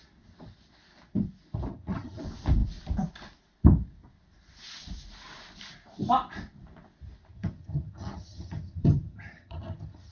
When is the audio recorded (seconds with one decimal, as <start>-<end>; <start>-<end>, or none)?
0.0-1.7; 2.2-7.3

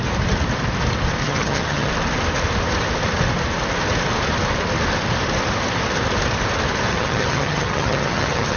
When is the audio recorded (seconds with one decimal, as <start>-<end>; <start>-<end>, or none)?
0.0-1.2; 1.9-6.9

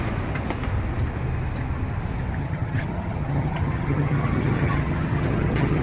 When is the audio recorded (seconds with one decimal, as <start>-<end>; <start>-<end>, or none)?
0.0-2.4

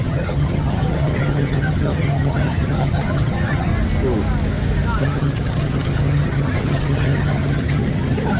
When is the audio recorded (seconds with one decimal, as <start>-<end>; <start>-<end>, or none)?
3.7-5.0

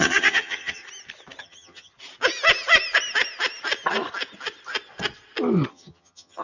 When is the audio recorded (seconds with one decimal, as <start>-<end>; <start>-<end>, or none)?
0.8-1.4; 1.9-5.7